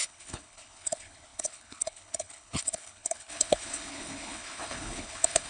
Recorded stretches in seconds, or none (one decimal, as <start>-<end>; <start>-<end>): none